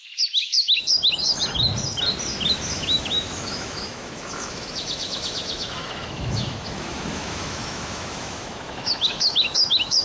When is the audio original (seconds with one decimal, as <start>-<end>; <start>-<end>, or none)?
1.7-2.5